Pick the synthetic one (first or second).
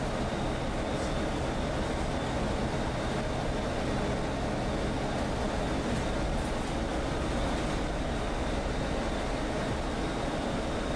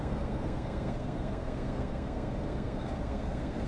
second